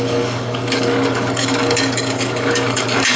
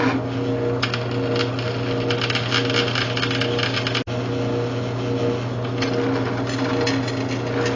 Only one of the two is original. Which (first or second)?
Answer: second